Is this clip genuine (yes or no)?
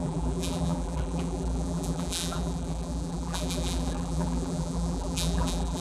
no